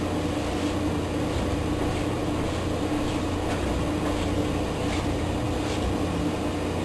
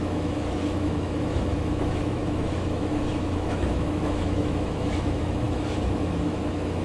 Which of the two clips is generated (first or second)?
second